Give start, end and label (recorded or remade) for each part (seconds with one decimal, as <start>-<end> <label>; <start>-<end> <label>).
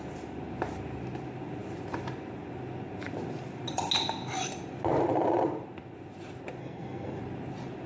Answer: 0.0-6.6 recorded; 6.6-7.2 remade; 7.2-7.9 recorded